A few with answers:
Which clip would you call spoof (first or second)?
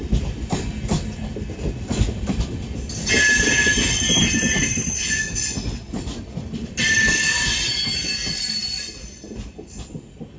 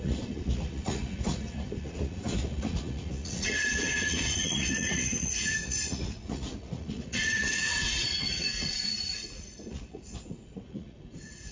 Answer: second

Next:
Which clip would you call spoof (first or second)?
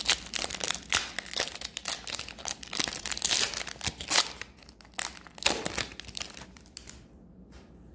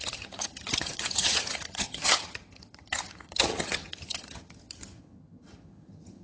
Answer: second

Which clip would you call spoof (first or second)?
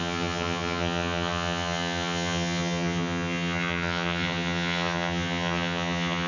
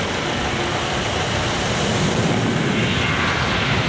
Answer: first